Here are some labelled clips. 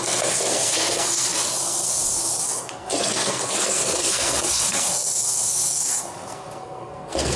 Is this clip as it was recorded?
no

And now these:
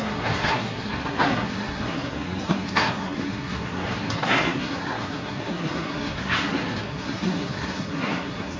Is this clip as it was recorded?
no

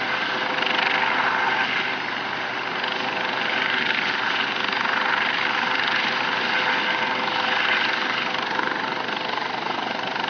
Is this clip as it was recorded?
yes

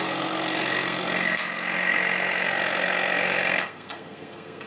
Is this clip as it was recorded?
no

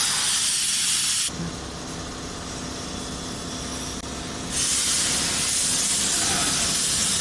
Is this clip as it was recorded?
yes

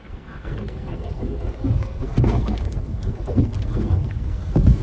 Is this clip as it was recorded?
no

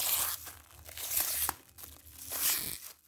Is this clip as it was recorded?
yes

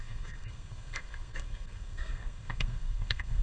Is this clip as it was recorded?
no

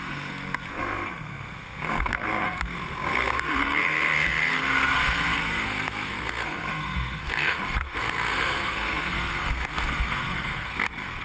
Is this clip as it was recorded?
no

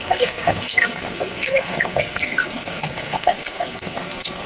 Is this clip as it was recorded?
no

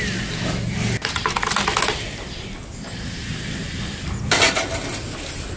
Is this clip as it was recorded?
yes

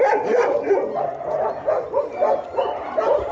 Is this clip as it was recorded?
yes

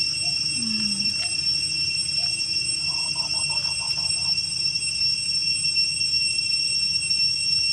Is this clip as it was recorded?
yes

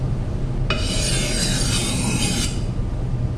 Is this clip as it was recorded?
yes